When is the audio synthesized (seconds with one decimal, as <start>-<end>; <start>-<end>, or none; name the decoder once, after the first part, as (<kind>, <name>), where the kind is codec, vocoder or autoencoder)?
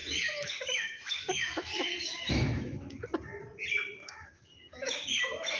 0.0-3.0 (autoencoder, DAC-VAE); 4.0-5.6